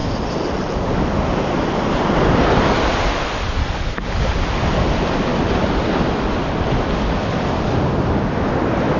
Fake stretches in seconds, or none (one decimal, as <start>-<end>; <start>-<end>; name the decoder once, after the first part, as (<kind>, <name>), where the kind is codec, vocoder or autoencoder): none